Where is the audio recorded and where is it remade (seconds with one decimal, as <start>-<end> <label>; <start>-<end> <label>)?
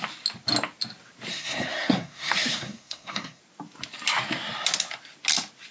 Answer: 0.0-1.3 recorded; 1.3-3.4 remade; 3.4-5.7 recorded